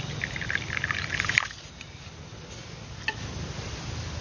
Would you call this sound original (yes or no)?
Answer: yes